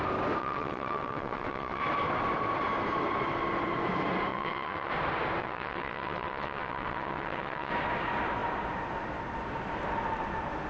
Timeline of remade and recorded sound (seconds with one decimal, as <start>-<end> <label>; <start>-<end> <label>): 0.0-0.4 recorded; 0.4-1.8 remade; 1.8-4.3 recorded; 4.3-4.9 remade; 4.9-5.4 recorded; 5.4-7.7 remade; 7.7-10.7 recorded